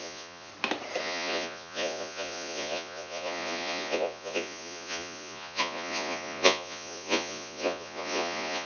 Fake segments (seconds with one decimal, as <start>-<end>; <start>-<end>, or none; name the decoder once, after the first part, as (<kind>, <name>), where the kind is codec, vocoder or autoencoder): 0.0-0.5 (vocoder, Vocos); 1.0-8.7